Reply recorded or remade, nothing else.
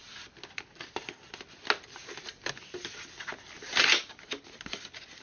recorded